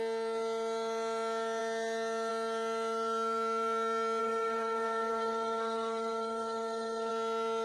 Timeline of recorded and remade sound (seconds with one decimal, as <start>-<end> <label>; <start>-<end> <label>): 0.0-4.2 recorded; 4.2-7.1 remade; 7.1-7.6 recorded